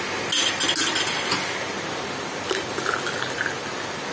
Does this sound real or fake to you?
real